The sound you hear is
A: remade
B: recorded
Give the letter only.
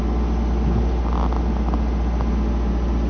B